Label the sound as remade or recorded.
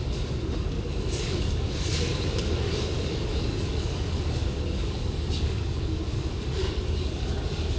remade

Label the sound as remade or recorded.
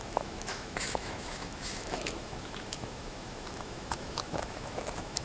remade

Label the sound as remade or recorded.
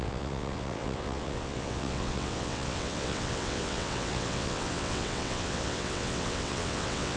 remade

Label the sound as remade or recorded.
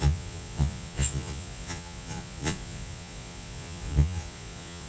remade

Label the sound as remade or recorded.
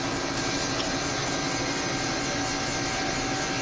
recorded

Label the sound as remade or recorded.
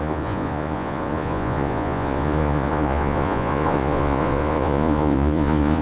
remade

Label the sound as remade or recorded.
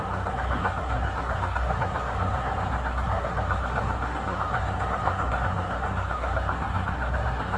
remade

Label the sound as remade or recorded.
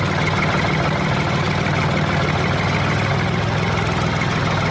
recorded